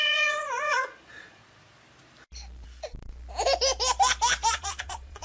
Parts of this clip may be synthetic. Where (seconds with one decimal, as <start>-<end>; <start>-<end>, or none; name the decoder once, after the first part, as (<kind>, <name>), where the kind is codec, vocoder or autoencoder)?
0.0-1.4 (vocoder, Vocos); 4.5-5.2